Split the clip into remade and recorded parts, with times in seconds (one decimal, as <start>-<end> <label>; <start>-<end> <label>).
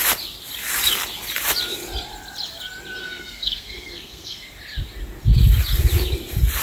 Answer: 0.0-3.0 recorded; 3.0-4.5 remade; 4.5-6.6 recorded